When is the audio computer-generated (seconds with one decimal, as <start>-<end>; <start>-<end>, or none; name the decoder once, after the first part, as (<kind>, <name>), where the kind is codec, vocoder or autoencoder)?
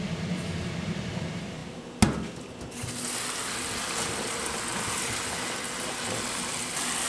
none